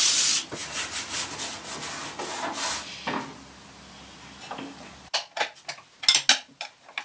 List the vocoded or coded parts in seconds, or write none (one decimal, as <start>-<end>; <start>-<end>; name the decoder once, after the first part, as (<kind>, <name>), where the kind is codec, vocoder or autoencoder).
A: none